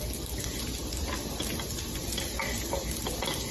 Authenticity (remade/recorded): recorded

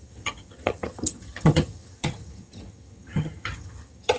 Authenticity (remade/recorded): remade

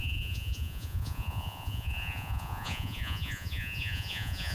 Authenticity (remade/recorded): remade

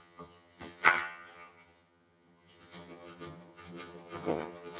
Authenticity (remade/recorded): remade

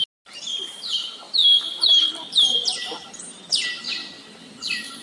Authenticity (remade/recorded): recorded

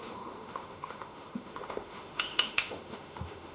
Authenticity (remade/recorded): remade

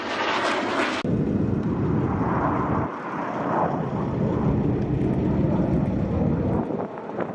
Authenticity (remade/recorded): recorded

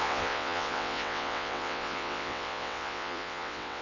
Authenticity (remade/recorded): remade